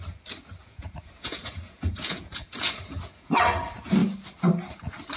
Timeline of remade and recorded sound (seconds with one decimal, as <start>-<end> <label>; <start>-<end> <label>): 0.0-0.6 recorded; 0.6-3.3 remade; 3.3-5.2 recorded